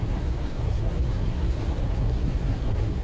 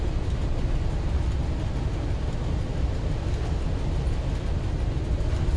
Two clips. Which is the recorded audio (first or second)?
second